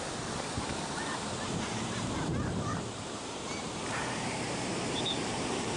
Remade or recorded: remade